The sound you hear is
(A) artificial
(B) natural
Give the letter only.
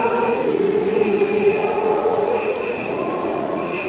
A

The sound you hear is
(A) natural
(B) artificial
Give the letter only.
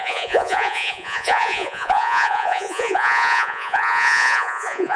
B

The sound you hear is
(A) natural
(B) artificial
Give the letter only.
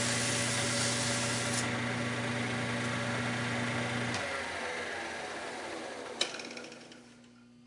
A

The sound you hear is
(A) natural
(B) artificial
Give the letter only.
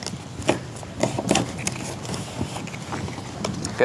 A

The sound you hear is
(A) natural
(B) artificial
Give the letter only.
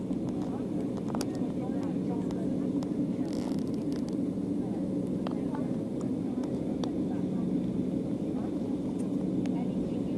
A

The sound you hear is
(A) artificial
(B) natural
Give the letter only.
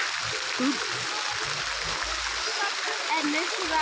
B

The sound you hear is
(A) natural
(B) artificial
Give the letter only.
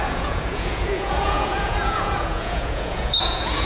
B